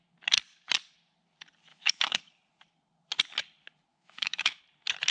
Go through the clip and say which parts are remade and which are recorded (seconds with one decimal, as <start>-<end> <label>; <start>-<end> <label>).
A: 0.0-1.7 recorded; 1.7-2.2 remade; 2.2-3.9 recorded; 3.9-4.6 remade; 4.6-5.1 recorded